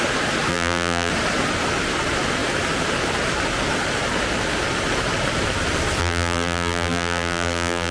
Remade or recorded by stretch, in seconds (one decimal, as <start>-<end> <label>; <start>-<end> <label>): 0.0-0.5 recorded; 0.5-1.1 remade; 1.1-6.0 recorded; 6.0-7.9 remade